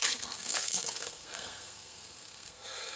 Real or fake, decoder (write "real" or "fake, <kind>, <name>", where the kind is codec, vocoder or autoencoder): fake, codec, SNAC